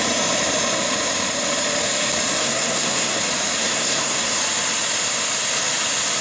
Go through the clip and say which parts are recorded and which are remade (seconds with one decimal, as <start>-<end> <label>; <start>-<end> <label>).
0.0-2.4 recorded; 2.4-3.2 remade; 3.2-3.6 recorded; 3.6-4.4 remade; 4.4-6.2 recorded